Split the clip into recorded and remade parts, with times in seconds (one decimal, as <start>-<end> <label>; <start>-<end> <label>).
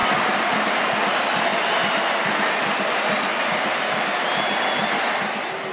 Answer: 0.0-5.7 recorded